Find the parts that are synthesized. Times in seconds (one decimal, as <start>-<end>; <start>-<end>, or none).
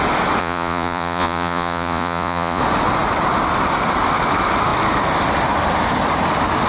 0.4-2.6